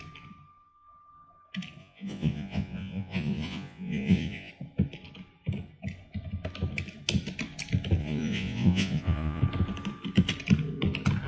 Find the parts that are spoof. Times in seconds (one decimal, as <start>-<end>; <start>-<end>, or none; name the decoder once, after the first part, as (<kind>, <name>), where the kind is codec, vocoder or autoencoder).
1.8-4.5 (vocoder, Vocos); 8.0-9.4